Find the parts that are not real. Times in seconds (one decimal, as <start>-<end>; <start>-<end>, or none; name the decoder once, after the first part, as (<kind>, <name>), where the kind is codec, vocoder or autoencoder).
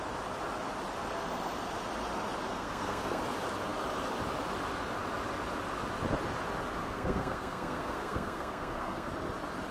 2.5-3.2 (codec, SNAC); 6.8-9.1